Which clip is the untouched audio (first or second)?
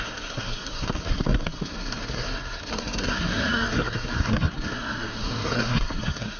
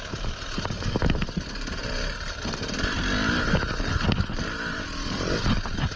second